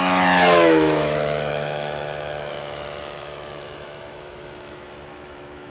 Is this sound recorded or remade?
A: remade